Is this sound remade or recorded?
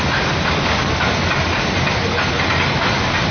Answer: recorded